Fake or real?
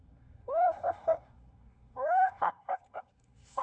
fake